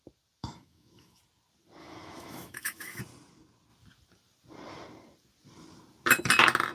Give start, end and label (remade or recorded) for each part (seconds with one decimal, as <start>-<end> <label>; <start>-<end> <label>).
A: 0.0-0.4 recorded; 0.4-1.2 remade; 1.2-1.8 recorded; 1.8-3.0 remade; 3.0-6.7 recorded